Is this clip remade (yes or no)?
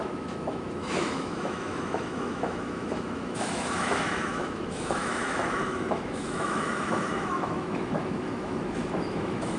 yes